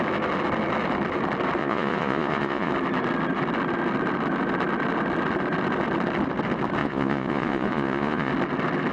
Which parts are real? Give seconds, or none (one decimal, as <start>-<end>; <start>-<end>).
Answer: 0.0-1.6; 2.7-6.8; 8.3-8.9